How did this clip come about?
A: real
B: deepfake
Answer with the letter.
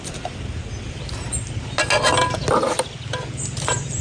A